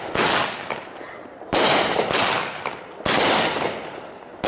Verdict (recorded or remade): recorded